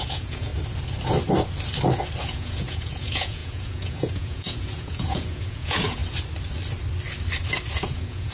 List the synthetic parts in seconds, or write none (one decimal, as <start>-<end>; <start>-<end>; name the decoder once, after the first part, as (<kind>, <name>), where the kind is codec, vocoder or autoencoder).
0.0-0.5 (vocoder, Vocos); 2.2-6.0; 7.9-8.3